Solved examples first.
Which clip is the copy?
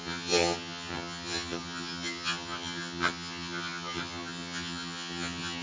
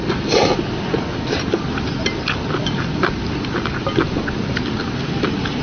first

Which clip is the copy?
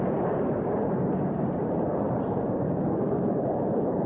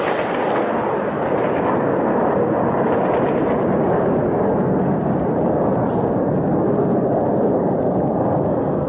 first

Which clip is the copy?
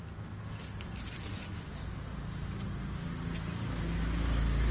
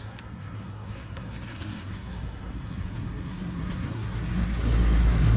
second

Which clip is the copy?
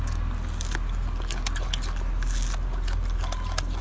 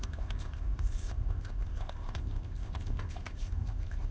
second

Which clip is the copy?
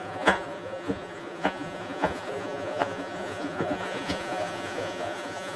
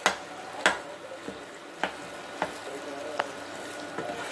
first